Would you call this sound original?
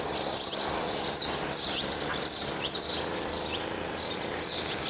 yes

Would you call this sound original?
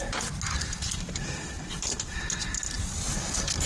yes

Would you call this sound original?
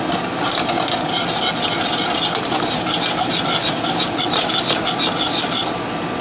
yes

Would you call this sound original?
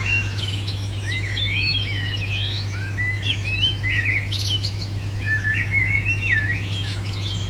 no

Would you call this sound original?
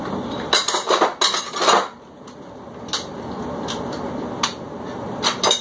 yes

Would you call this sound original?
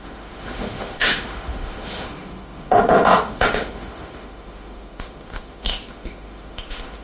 no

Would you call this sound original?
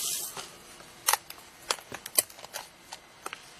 yes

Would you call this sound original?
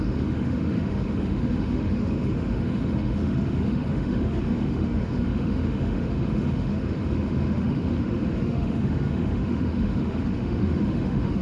no